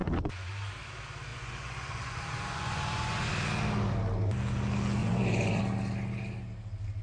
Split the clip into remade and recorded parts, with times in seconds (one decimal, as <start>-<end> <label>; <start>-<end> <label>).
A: 0.0-0.5 remade; 0.5-1.3 recorded; 1.3-3.3 remade; 3.3-5.0 recorded; 5.0-5.6 remade; 5.6-7.0 recorded